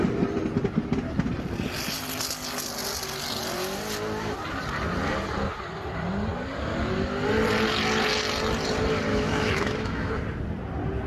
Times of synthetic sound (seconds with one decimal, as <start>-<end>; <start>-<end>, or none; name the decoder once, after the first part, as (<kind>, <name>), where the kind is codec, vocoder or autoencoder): 9.1-10.1 (autoencoder, DAC-VAE)